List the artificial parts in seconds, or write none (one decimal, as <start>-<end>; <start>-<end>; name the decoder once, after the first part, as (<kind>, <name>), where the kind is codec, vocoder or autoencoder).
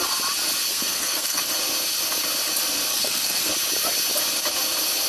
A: 0.7-1.4 (codec, SNAC); 2.9-3.5